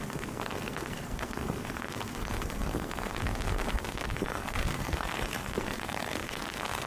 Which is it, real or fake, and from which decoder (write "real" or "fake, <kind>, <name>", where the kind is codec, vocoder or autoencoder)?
fake, codec, SNAC